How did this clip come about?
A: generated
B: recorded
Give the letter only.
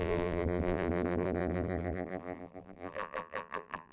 A